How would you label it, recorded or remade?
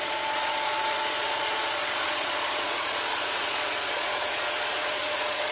remade